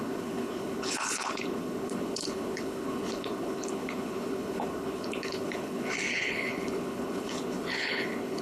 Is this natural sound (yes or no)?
no